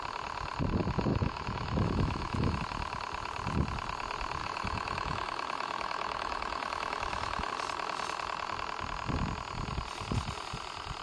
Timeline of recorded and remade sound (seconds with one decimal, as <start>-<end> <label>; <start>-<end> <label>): 0.0-1.1 recorded; 1.1-2.6 remade; 2.6-4.4 recorded; 4.4-7.5 remade; 7.5-11.0 recorded